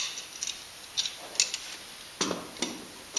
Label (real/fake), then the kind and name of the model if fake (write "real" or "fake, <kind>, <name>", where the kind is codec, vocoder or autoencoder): real